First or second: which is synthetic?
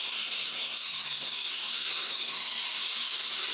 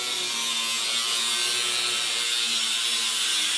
first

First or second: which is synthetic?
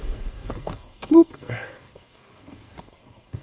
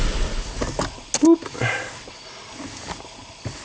first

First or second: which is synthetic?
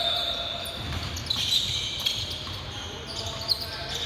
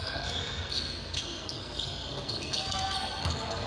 second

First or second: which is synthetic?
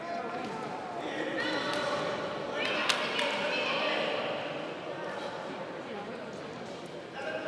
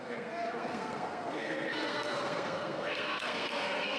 second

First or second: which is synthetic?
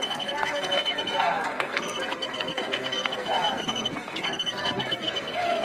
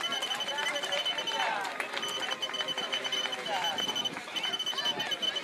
first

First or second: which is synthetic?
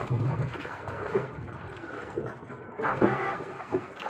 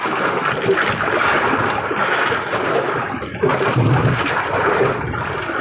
first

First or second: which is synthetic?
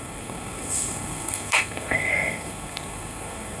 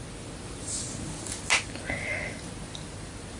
first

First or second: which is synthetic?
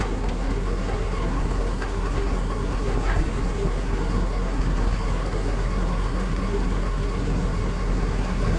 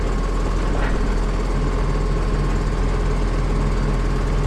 first